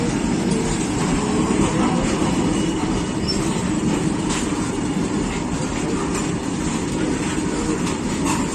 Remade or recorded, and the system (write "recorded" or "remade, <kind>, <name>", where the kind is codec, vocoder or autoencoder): recorded